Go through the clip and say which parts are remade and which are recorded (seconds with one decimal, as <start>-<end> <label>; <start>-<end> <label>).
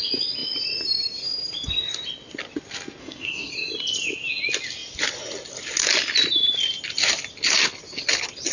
0.0-3.0 recorded; 3.0-3.5 remade; 3.5-8.5 recorded